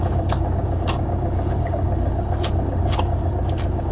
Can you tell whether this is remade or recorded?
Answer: remade